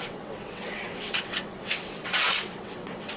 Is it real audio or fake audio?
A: fake